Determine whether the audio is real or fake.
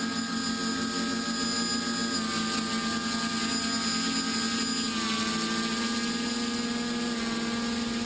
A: real